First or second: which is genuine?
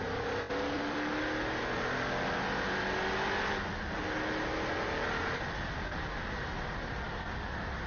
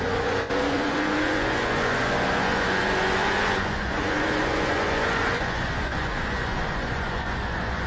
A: first